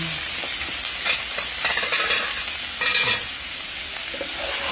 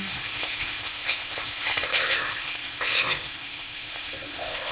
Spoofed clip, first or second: second